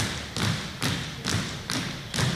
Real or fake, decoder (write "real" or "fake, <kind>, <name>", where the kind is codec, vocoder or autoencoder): fake, vocoder, BigVGAN v2